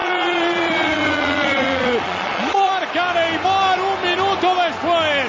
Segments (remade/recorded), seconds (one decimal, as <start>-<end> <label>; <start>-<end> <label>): 0.0-2.7 remade; 2.7-5.3 recorded